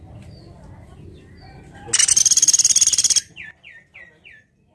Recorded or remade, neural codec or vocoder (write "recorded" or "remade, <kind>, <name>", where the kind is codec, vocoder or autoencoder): recorded